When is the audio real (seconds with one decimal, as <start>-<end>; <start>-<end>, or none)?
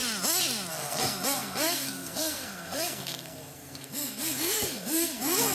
0.0-0.7